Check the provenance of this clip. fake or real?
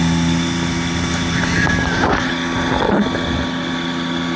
real